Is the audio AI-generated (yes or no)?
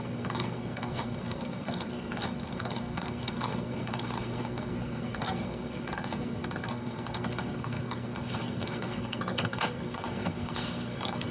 yes